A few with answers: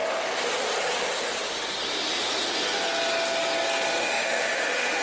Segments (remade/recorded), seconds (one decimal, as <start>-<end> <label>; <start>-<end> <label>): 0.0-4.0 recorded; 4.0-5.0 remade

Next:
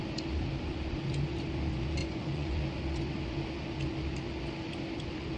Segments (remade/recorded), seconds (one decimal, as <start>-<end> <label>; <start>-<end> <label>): 0.0-2.0 recorded; 2.0-2.6 remade; 2.6-5.4 recorded

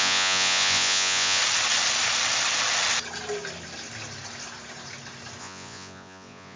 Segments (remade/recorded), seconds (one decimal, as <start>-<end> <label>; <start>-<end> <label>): 0.0-1.4 remade; 1.4-5.4 recorded; 5.4-6.6 remade